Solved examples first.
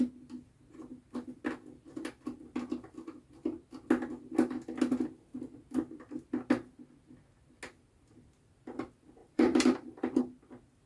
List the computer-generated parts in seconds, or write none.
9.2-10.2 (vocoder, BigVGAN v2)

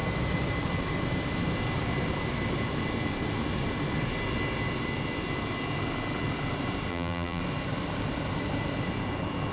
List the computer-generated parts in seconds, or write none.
6.9-7.4 (vocoder, BigVGAN v2)

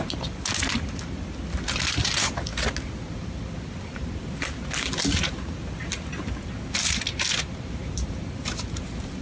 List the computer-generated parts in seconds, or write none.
none